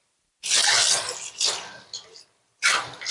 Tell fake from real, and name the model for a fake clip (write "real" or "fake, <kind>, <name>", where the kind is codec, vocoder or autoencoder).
real